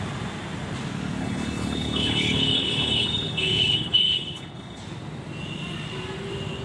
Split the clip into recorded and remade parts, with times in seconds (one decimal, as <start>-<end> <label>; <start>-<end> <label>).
0.0-1.2 recorded; 1.2-4.8 remade; 4.8-6.6 recorded